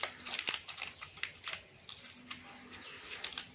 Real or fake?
real